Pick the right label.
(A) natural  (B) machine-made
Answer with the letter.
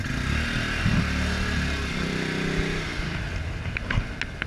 A